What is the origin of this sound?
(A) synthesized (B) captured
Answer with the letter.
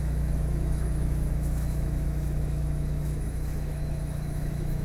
A